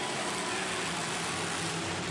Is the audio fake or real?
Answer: real